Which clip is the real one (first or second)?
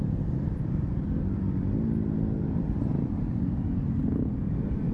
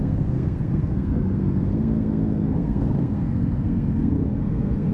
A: first